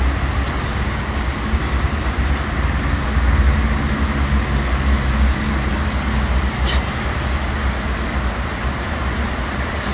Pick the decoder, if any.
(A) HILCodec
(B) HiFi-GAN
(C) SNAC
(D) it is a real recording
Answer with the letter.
D